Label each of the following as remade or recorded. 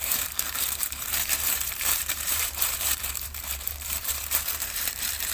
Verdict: remade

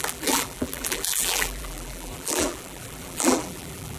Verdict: remade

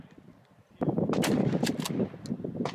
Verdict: recorded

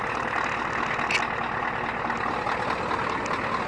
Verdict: recorded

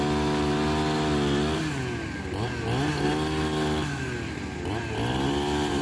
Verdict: recorded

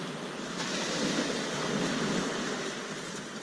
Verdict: recorded